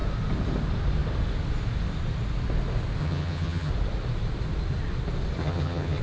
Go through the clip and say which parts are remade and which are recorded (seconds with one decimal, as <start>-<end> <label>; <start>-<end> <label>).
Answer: 0.0-3.0 recorded; 3.0-3.7 remade; 3.7-5.4 recorded; 5.4-6.0 remade